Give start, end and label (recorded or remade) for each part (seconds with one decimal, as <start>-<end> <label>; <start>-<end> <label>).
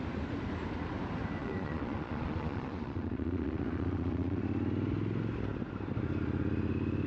0.0-1.4 recorded; 1.4-4.4 remade; 4.4-7.1 recorded